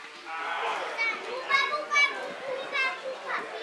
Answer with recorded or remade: recorded